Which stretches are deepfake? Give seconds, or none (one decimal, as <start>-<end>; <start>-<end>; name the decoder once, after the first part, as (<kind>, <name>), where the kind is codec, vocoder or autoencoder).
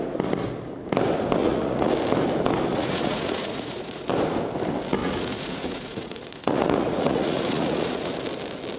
1.4-1.9 (vocoder, Vocos); 2.7-4.1; 5.0-8.2